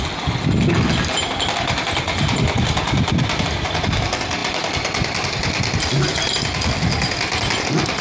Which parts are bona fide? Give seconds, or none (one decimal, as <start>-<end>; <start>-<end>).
0.0-8.0